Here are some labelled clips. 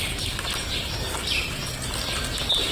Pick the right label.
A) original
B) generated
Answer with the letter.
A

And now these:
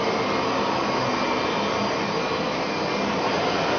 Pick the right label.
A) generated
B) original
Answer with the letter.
B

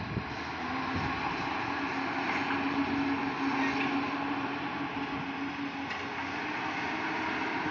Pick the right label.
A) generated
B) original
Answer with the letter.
B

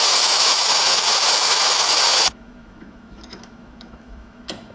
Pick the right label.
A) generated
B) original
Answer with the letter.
A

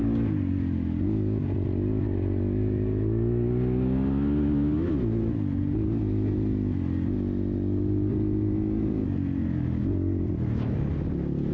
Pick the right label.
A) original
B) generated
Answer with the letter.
A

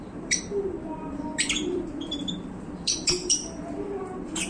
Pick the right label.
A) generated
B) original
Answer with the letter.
A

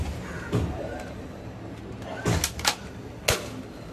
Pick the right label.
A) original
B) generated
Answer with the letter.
A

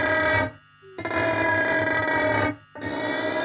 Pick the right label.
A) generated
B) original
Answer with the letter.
A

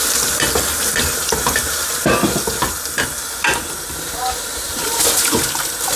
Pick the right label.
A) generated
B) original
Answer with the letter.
B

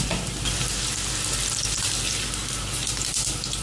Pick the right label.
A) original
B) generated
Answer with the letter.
A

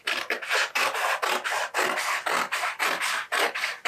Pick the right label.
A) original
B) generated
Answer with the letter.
A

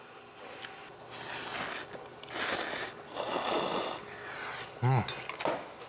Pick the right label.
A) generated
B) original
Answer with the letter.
B